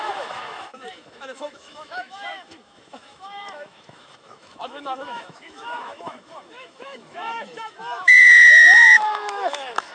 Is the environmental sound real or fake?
fake